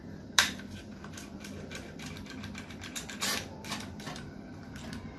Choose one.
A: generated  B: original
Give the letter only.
A